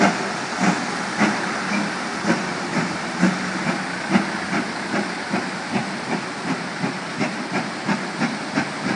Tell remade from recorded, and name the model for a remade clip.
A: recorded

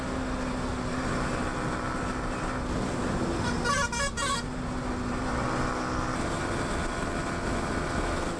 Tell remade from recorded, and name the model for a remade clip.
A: recorded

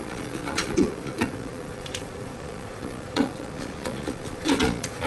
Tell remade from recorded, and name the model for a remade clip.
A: remade, vocoder, Vocos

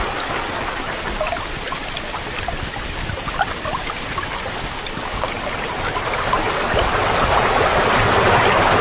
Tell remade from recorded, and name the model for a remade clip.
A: recorded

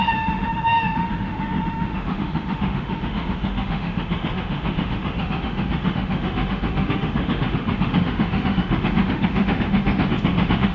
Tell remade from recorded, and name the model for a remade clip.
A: remade, autoencoder, DAC-VAE